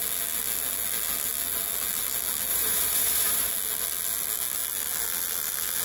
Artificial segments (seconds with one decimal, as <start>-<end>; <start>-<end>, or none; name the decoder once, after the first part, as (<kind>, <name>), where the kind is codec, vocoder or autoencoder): 2.5-3.5 (vocoder, BigVGAN v2)